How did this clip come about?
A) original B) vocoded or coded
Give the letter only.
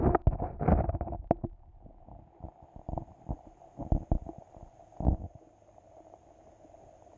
A